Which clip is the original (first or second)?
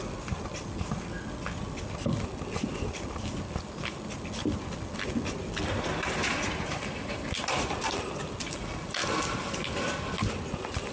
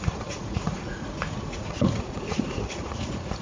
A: first